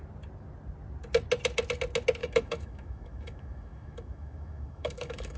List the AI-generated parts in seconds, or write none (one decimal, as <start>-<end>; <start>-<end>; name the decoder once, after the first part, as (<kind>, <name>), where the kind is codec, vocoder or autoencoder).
2.2-5.4 (autoencoder, DAC-VAE)